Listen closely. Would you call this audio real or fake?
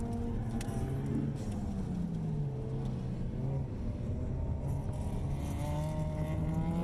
real